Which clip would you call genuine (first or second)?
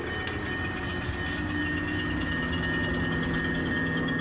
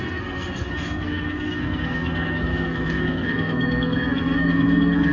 first